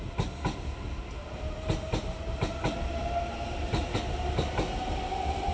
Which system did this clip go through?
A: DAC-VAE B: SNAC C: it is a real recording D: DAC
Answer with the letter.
C